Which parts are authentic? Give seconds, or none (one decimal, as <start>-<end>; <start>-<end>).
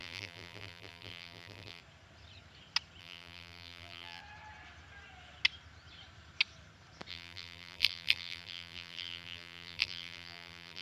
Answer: 1.8-3.0; 4.2-7.1